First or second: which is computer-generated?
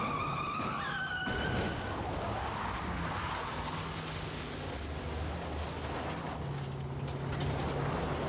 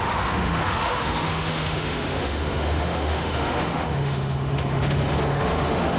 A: second